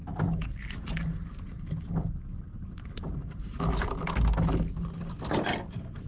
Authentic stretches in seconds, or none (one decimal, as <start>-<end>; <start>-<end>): 0.0-6.1